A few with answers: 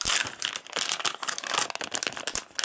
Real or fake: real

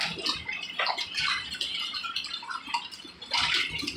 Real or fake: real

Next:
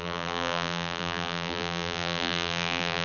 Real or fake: fake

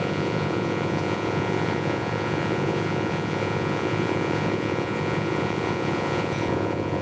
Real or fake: fake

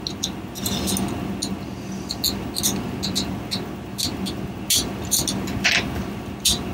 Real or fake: real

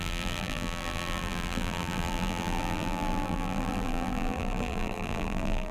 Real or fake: fake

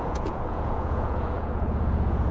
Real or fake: fake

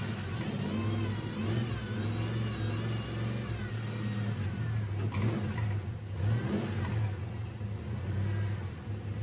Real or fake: real